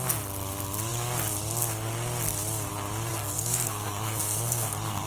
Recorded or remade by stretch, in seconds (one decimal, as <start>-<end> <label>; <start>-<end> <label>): 0.0-3.1 recorded; 3.1-5.1 remade